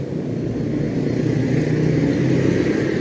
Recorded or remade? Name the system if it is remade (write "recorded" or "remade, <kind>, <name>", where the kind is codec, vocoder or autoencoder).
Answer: recorded